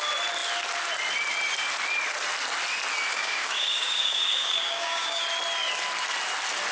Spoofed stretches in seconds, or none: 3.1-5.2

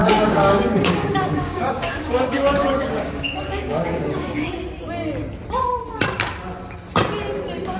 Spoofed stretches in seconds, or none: 0.0-4.5

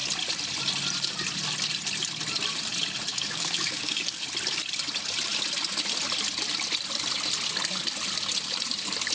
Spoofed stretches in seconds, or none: 3.1-4.2

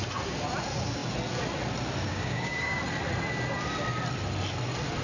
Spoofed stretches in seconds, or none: 2.1-2.8